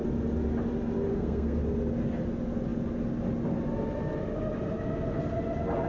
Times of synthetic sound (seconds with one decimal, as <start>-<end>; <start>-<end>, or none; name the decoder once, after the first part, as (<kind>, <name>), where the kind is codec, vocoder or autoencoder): 1.1-1.6 (codec, SNAC)